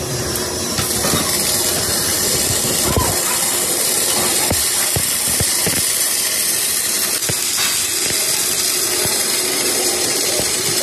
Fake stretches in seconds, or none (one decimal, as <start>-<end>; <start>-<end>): 0.0-7.2; 8.8-10.8